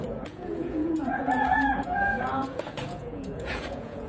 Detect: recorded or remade remade